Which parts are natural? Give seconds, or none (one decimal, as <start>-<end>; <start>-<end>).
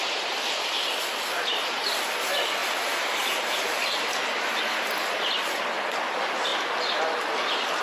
0.0-1.5; 2.0-2.6; 4.4-7.8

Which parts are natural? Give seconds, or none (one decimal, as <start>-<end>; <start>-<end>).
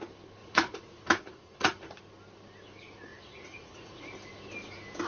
0.0-0.4; 2.0-3.1; 4.0-5.1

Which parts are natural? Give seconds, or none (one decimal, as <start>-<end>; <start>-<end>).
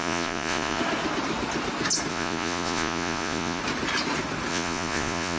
0.8-2.1; 3.6-4.5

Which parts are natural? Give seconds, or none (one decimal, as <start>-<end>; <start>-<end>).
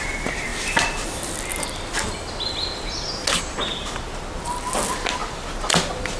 0.0-6.2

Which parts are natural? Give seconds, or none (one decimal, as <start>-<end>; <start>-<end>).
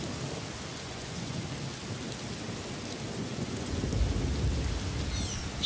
0.0-0.7; 1.4-3.2; 3.8-5.7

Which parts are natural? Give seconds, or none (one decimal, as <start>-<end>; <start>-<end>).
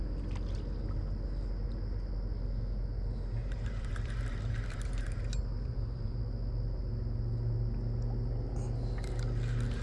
0.0-3.4; 6.2-9.8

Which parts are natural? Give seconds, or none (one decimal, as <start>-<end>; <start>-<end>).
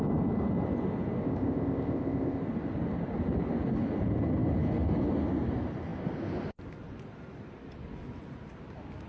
0.0-1.2; 2.4-9.1